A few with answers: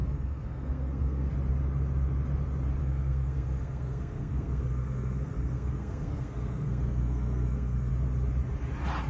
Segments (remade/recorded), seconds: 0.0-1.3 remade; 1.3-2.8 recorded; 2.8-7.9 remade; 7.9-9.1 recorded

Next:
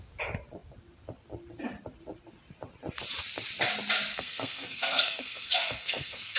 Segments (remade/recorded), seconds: 0.0-4.1 recorded; 4.1-6.4 remade